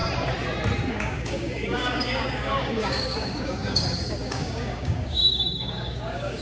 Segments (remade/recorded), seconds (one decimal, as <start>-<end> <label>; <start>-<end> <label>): 0.0-0.9 recorded; 0.9-6.4 remade